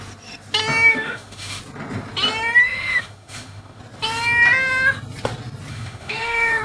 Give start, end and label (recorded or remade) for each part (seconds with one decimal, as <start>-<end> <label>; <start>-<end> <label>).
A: 0.0-0.9 recorded; 0.9-1.6 remade; 1.6-2.6 recorded; 2.6-3.8 remade; 3.8-5.7 recorded; 5.7-6.6 remade

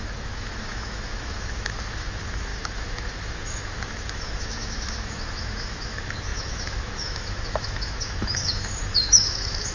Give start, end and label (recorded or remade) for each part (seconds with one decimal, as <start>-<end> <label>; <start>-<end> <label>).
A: 0.0-9.7 remade

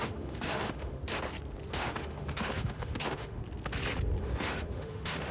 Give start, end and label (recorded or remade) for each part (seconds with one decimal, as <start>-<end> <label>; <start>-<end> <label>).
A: 0.0-1.0 remade; 1.0-1.7 recorded; 1.7-3.4 remade; 3.4-4.2 recorded; 4.2-5.3 remade